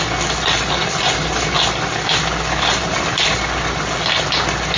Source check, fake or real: real